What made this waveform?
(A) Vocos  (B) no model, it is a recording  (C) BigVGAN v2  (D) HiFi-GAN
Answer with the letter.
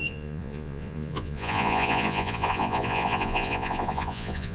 A